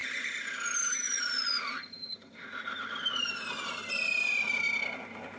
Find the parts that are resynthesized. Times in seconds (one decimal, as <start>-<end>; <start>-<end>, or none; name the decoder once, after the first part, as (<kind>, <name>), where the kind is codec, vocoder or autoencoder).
none